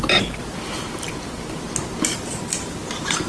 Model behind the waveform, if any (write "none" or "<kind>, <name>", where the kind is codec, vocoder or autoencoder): none